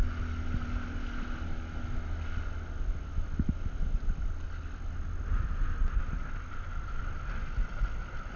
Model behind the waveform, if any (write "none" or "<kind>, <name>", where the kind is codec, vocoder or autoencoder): none